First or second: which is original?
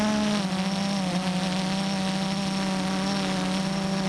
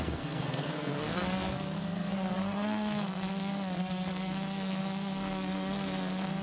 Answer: first